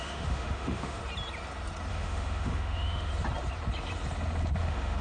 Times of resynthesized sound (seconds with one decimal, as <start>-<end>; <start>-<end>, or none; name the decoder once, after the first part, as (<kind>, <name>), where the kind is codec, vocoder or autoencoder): 0.0-1.0 (autoencoder, DAC-VAE); 1.9-3.1; 4.6-5.0